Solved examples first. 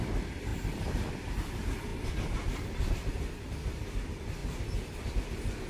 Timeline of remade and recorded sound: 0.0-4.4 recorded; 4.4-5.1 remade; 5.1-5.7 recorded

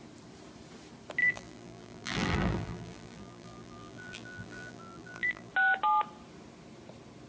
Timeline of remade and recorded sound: 0.0-1.2 recorded; 1.2-5.5 remade; 5.5-7.3 recorded

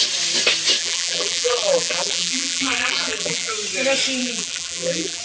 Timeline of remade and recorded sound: 0.0-0.8 recorded; 0.8-3.5 remade; 3.5-4.2 recorded; 4.2-5.2 remade